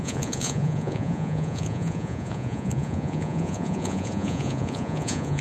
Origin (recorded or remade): remade